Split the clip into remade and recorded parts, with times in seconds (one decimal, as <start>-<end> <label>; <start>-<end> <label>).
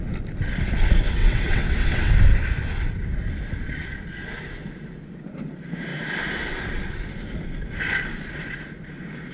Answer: 0.0-1.2 recorded; 1.2-2.1 remade; 2.1-9.3 recorded